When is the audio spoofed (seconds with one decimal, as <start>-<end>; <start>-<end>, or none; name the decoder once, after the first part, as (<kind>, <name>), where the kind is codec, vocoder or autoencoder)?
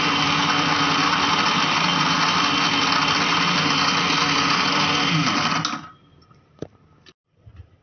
0.0-1.9 (vocoder, BigVGAN v2); 6.2-7.8